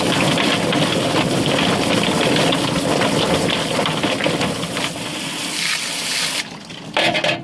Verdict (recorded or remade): recorded